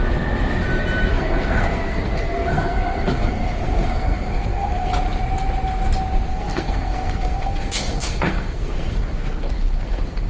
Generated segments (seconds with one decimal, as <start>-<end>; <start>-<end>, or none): 1.1-4.9; 6.3-10.3